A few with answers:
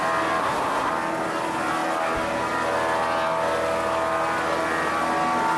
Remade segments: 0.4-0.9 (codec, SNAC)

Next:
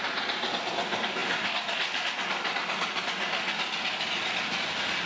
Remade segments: none

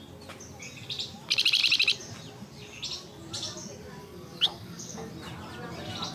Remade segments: 4.0-5.1 (codec, DAC)

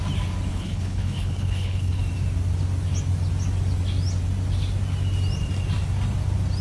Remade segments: 0.5-2.0 (codec, HILCodec)

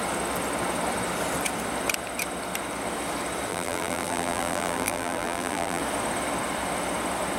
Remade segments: 3.5-5.8 (vocoder, BigVGAN v2)